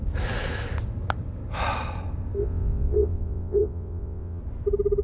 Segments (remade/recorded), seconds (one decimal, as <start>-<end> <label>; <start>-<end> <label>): 0.0-2.4 recorded; 2.4-4.4 remade; 4.4-5.0 recorded